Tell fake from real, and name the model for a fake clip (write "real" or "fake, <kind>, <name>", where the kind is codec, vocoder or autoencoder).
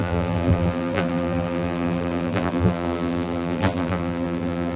fake, vocoder, BigVGAN v2